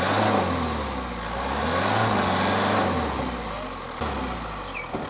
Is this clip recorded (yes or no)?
yes